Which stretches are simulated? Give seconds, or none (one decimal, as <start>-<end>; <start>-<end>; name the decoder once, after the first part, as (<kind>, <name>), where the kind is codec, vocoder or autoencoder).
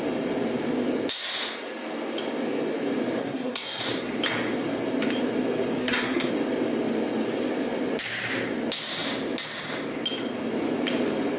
3.2-3.8 (codec, SNAC); 5.8-6.3